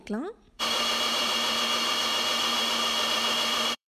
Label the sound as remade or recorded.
remade